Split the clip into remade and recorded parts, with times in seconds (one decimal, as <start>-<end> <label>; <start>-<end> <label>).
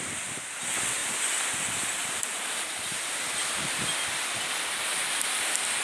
0.0-1.0 recorded; 1.0-4.5 remade; 4.5-5.8 recorded